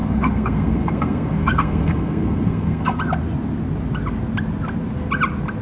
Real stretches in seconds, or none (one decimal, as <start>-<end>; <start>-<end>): 3.0-5.6